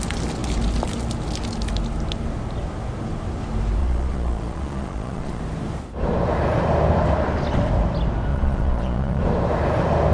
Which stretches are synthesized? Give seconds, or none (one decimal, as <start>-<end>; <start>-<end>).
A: 3.8-5.4; 8.3-9.2